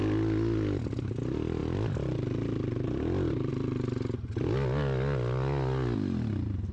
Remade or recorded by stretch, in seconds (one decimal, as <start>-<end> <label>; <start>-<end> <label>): 0.0-6.7 recorded